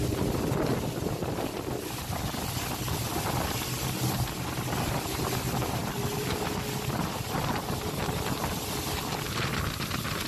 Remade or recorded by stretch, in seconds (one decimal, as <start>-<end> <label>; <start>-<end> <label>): 0.0-10.3 recorded